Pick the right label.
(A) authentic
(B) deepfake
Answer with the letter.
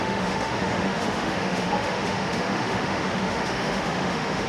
B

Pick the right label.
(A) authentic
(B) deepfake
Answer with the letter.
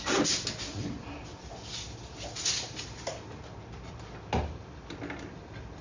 A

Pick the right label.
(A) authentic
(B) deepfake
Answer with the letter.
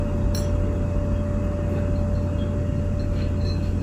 A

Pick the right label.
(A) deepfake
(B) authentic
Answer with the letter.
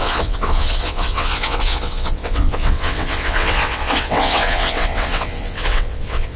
A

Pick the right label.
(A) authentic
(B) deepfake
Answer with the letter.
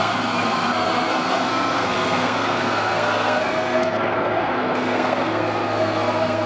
B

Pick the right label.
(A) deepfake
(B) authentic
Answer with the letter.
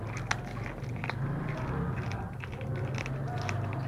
B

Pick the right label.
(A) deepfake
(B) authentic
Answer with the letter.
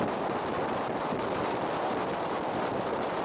B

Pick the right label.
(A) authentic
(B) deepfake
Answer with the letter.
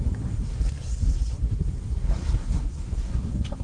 B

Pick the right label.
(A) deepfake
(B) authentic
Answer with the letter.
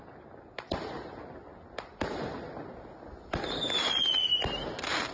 B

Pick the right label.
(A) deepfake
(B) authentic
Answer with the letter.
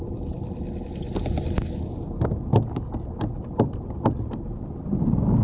B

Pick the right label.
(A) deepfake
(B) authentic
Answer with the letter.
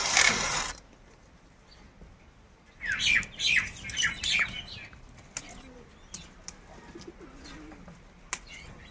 B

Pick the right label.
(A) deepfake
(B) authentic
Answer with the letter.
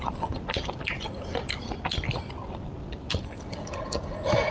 B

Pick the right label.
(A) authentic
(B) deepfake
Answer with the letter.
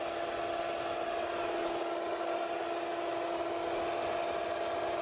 A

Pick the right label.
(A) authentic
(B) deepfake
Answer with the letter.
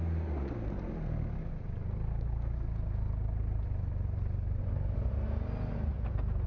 A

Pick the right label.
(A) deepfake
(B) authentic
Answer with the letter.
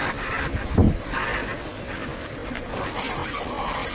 B